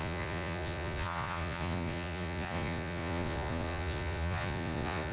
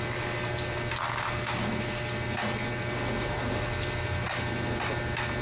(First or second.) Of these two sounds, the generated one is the first